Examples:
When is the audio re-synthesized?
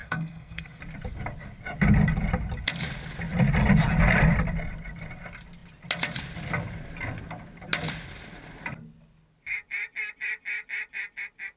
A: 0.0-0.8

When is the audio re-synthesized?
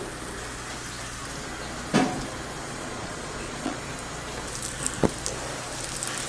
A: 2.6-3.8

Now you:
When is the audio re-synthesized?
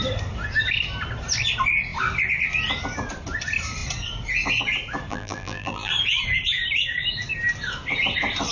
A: 5.1-5.9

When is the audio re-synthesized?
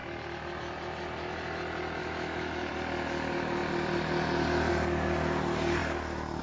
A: 2.0-2.7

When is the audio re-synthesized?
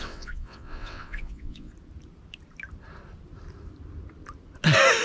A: 0.0-1.7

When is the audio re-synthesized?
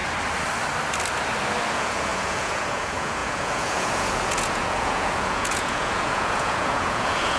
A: 1.7-7.4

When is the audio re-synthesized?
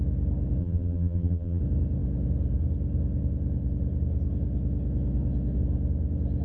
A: 0.6-1.6